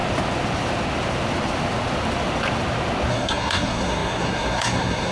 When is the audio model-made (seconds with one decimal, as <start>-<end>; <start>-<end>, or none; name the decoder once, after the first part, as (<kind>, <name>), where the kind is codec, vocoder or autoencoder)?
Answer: 3.1-5.1 (codec, SNAC)